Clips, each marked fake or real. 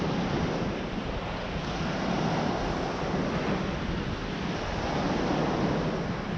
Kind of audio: real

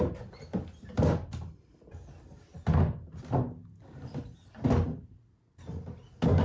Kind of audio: real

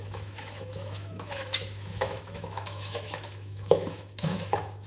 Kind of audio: fake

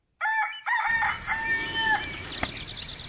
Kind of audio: real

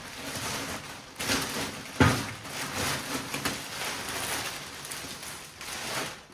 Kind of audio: real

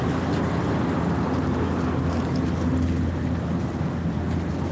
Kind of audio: real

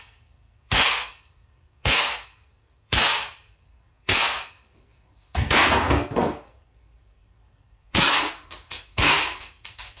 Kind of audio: fake